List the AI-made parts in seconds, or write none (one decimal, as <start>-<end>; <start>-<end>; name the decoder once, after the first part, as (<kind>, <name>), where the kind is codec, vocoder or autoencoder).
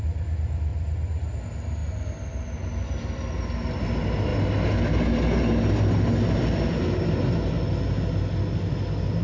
none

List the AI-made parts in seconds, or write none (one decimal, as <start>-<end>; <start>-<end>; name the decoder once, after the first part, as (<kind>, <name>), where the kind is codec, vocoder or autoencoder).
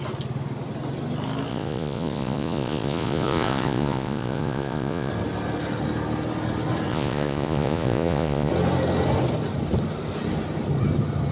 1.5-5.1 (vocoder, Vocos); 6.9-8.5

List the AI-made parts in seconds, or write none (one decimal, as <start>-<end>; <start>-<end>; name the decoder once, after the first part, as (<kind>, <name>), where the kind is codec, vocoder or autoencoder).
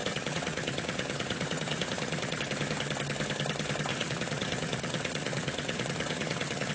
0.0-2.4 (vocoder, Vocos); 3.9-6.7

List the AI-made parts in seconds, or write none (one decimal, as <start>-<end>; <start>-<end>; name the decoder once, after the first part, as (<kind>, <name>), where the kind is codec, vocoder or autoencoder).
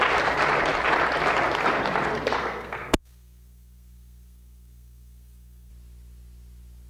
2.4-5.7 (codec, SNAC)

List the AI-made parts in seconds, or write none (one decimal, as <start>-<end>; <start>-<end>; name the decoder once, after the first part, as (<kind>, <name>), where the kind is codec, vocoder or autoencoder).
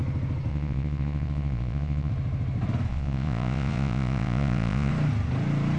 0.5-2.1 (vocoder, Vocos); 2.9-4.9